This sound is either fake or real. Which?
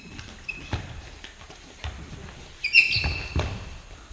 real